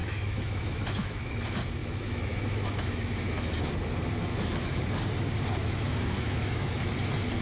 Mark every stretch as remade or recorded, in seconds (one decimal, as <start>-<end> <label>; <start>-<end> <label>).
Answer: 0.0-1.3 remade; 1.3-1.8 recorded; 1.8-3.6 remade; 3.6-4.3 recorded; 4.3-4.8 remade; 4.8-5.6 recorded; 5.6-6.9 remade; 6.9-7.4 recorded